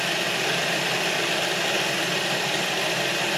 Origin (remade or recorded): recorded